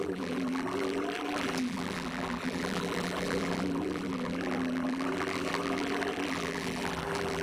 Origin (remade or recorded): remade